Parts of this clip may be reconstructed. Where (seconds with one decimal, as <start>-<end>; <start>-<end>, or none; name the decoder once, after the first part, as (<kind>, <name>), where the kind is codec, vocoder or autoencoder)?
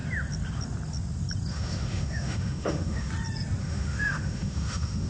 1.5-3.1 (autoencoder, DAC-VAE); 3.6-5.1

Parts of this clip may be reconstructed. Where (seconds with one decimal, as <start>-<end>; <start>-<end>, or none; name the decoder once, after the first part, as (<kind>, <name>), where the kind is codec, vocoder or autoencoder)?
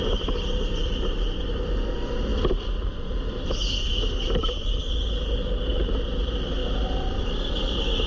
none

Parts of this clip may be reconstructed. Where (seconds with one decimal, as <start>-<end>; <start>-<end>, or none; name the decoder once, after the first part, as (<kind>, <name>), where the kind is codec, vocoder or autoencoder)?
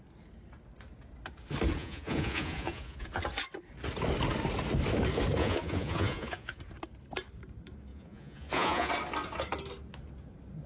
1.8-3.2 (vocoder, Vocos); 5.4-6.6; 7.9-8.9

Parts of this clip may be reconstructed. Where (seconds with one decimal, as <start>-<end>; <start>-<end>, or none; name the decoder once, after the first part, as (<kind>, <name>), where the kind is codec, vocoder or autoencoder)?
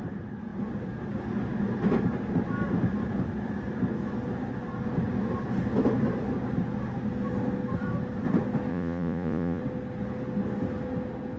8.7-9.6 (vocoder, Vocos)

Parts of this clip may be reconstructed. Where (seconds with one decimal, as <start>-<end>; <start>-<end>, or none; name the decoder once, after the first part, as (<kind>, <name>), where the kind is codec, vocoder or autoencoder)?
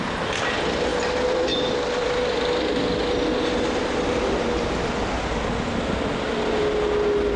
none